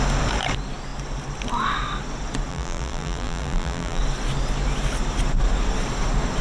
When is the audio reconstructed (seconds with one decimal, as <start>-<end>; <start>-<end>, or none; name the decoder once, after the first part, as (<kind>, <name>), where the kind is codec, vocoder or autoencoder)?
2.5-4.0 (vocoder, BigVGAN v2)